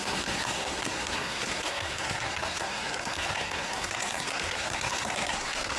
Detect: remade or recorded remade